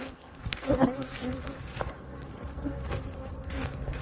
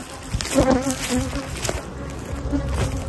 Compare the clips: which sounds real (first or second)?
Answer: second